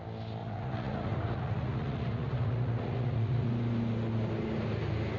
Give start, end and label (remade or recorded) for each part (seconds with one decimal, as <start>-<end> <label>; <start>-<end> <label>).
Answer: 0.0-0.4 recorded; 0.4-3.5 remade; 3.5-5.2 recorded